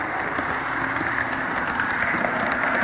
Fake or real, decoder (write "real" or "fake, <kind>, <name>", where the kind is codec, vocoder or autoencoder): real